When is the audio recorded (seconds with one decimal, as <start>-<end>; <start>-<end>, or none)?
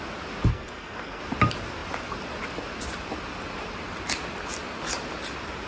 0.0-0.5; 1.2-5.7